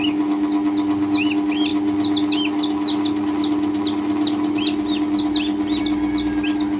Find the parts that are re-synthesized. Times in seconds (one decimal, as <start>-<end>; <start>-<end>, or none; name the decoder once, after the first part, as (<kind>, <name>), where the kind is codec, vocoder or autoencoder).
none